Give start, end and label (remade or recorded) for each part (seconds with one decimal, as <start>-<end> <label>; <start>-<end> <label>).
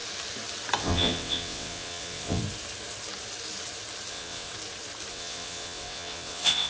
0.0-0.8 recorded; 0.8-2.4 remade; 2.4-4.1 recorded; 4.1-4.5 remade; 4.5-5.1 recorded; 5.1-6.7 remade